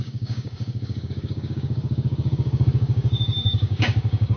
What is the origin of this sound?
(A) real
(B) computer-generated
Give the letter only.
B